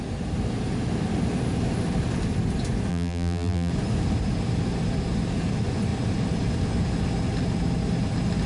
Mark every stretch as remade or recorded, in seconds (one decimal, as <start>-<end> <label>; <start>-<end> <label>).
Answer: 0.0-2.9 recorded; 2.9-3.7 remade; 3.7-8.5 recorded